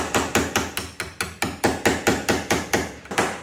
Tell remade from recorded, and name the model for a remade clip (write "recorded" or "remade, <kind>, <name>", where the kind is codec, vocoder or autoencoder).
recorded